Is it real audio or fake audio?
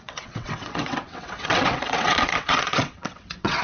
fake